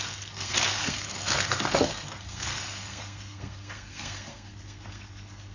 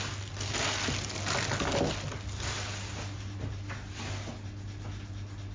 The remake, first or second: first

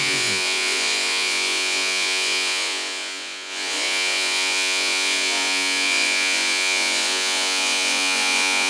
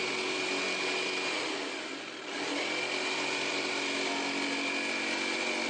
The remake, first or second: first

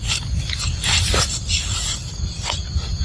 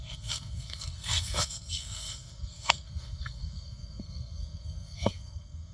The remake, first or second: second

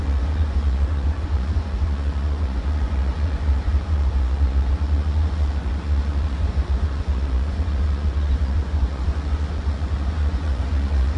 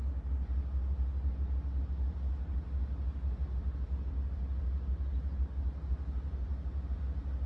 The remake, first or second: first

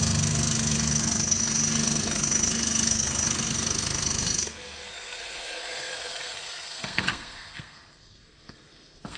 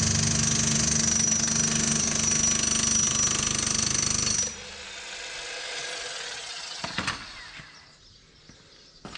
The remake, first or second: first